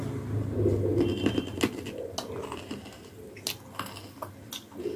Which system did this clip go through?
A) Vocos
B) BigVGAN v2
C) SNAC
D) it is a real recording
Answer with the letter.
D